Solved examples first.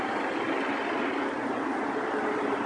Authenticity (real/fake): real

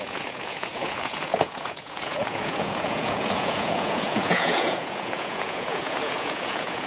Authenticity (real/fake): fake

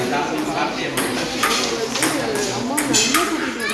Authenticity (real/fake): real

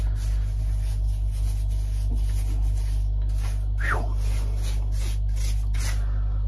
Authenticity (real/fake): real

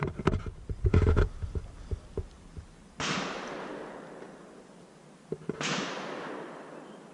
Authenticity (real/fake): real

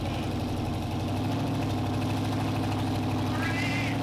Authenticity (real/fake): real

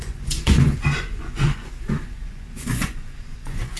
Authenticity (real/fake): fake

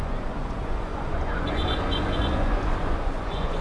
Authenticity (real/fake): fake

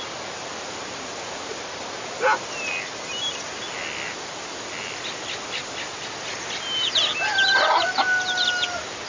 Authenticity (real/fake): real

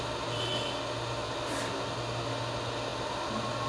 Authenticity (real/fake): real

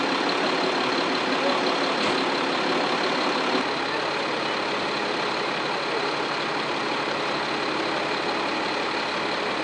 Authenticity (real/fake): real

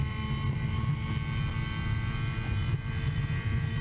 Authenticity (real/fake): real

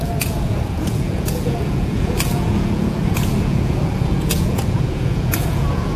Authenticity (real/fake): fake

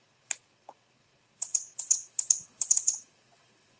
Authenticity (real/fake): fake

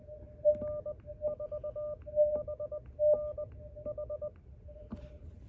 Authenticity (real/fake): real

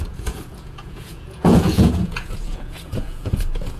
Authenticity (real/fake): fake